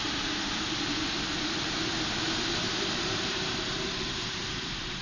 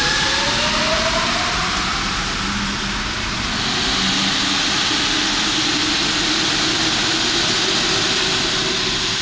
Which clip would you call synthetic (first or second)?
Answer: first